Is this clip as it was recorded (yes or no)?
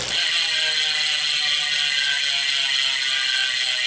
yes